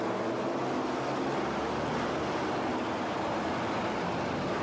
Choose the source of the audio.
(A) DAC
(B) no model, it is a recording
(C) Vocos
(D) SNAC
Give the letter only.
B